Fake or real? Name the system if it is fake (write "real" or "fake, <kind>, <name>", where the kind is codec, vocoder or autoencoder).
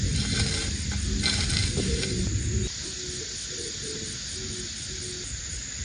real